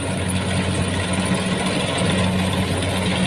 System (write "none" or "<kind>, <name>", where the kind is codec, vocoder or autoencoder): none